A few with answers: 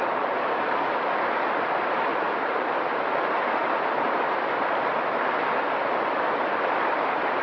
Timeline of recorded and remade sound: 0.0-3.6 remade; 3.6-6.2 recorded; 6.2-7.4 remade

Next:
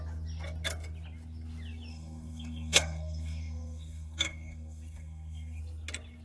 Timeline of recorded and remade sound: 0.0-1.9 recorded; 1.9-5.6 remade; 5.6-6.2 recorded

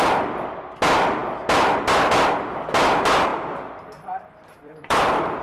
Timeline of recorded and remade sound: 0.0-1.2 remade; 1.2-1.8 recorded; 1.8-3.3 remade; 3.3-3.8 recorded; 3.8-5.4 remade

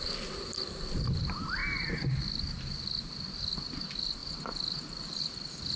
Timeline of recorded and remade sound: 0.0-5.8 recorded

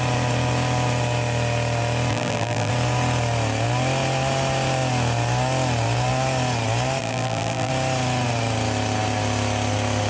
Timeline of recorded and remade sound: 0.0-2.1 recorded; 2.1-2.7 remade; 2.7-7.0 recorded; 7.0-7.7 remade; 7.7-10.1 recorded

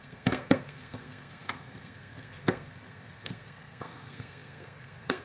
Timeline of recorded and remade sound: 0.0-5.2 remade

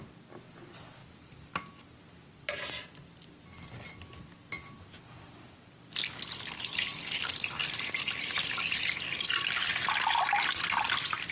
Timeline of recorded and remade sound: 0.0-11.3 recorded